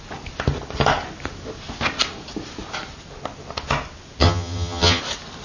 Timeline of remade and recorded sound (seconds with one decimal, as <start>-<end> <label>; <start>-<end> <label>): 0.0-4.2 recorded; 4.2-5.0 remade; 5.0-5.4 recorded